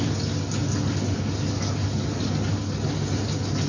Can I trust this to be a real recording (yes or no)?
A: yes